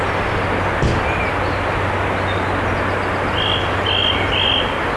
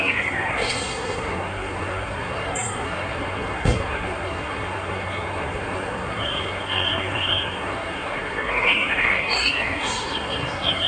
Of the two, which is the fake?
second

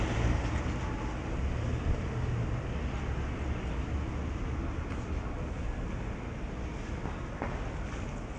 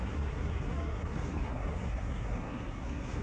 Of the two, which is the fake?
second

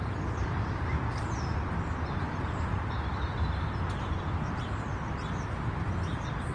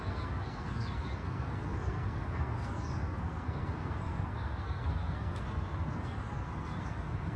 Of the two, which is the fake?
second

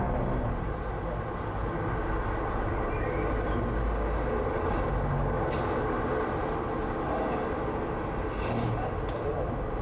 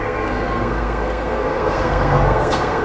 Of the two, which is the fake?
second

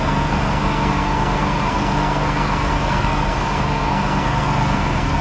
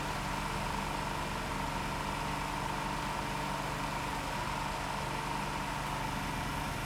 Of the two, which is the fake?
first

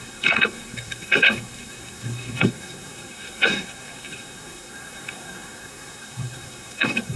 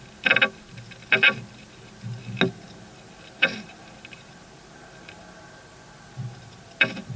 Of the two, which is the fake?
first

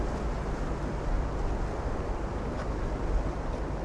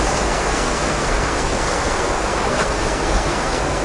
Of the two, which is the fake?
second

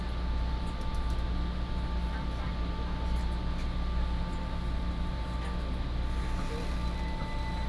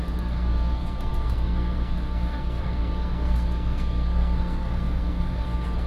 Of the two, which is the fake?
second